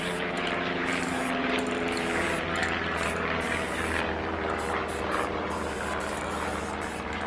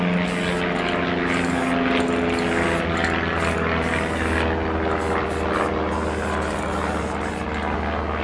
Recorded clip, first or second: second